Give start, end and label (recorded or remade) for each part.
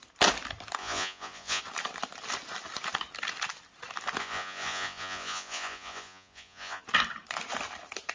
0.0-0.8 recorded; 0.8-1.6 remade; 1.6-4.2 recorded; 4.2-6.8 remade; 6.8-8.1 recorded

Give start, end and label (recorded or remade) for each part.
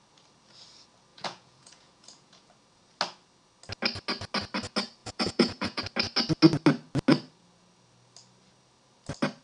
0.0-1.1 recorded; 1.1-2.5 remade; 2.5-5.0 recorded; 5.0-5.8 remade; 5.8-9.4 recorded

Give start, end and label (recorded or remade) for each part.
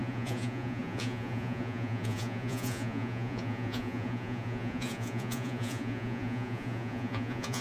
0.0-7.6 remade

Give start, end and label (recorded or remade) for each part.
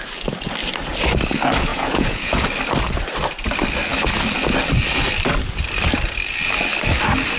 0.0-1.7 recorded; 1.7-2.3 remade; 2.3-7.4 recorded